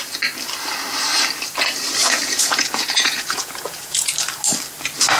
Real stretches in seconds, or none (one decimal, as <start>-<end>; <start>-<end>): 0.0-2.0; 4.1-5.2